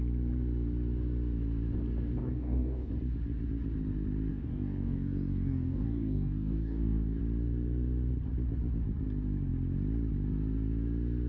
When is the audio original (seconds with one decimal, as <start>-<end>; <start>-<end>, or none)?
0.0-2.2; 2.9-4.3; 7.2-11.3